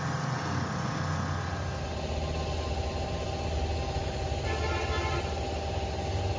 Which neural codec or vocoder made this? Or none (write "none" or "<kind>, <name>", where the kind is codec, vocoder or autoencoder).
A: none